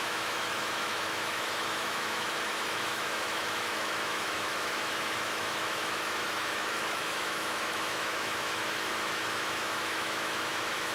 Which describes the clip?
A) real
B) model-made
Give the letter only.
B